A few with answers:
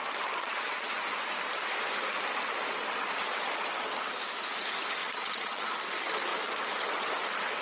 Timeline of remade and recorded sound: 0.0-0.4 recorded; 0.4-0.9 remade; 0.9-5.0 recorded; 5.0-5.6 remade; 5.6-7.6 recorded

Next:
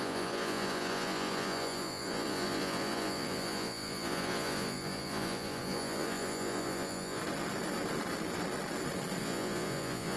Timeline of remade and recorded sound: 0.0-7.2 remade; 7.2-9.2 recorded; 9.2-10.2 remade

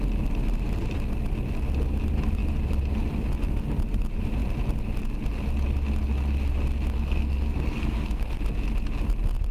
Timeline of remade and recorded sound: 0.0-6.9 recorded; 6.9-8.4 remade; 8.4-9.5 recorded

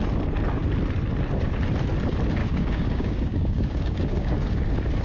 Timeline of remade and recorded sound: 0.0-2.4 recorded; 2.4-4.5 remade; 4.5-5.0 recorded

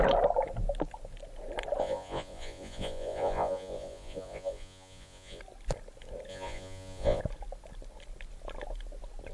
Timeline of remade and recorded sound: 0.0-1.8 recorded; 1.8-5.4 remade; 5.4-6.3 recorded; 6.3-7.2 remade; 7.2-9.3 recorded

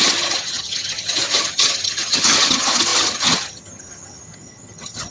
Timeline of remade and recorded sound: 0.0-5.1 remade